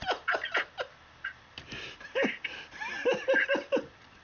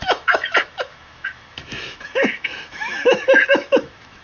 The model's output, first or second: second